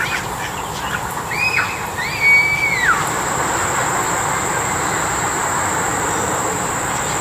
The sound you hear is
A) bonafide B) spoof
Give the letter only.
A